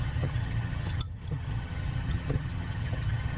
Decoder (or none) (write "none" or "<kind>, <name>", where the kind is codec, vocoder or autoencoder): vocoder, HiFi-GAN